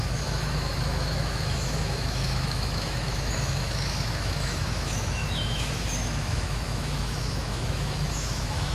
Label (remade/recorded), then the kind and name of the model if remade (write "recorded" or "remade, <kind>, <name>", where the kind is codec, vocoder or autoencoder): remade, autoencoder, DAC-VAE